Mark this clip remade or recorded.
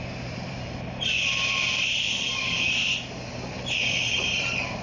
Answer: remade